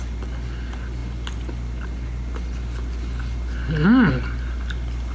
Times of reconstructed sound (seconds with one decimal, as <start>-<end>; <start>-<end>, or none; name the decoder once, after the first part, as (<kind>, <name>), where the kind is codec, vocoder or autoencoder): none